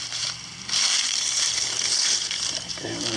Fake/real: fake